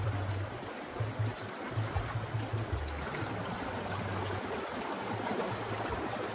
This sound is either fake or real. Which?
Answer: real